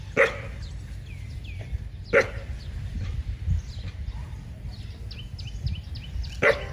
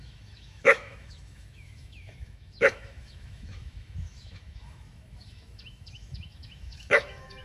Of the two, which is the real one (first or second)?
first